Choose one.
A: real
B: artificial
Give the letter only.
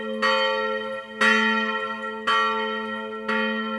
A